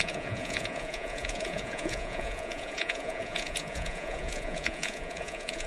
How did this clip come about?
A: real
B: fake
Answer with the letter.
B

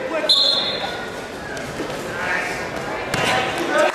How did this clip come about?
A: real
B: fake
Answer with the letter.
A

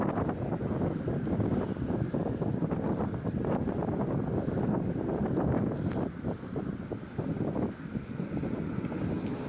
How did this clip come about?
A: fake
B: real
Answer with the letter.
B